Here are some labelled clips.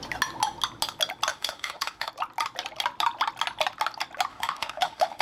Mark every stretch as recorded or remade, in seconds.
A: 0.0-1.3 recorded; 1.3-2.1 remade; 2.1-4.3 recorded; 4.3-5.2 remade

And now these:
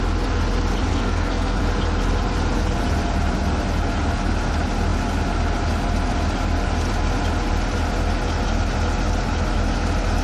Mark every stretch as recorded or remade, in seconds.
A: 0.0-0.9 recorded; 0.9-1.6 remade; 1.6-10.2 recorded

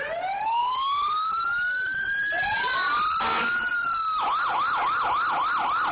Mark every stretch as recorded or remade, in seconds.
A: 0.0-5.9 recorded

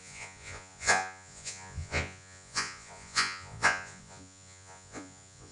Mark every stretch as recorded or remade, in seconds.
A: 0.0-5.5 remade

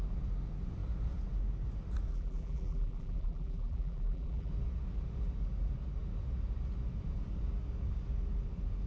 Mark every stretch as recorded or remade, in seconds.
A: 0.0-2.1 recorded; 2.1-4.5 remade; 4.5-8.9 recorded

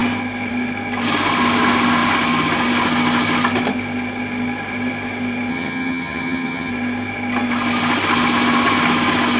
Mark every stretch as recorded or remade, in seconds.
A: 0.0-5.5 recorded; 5.5-6.7 remade; 6.7-9.4 recorded

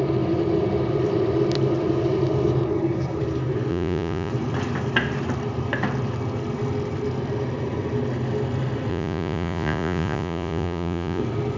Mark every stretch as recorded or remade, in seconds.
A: 0.0-3.7 recorded; 3.7-4.3 remade; 4.3-8.9 recorded; 8.9-11.2 remade; 11.2-11.6 recorded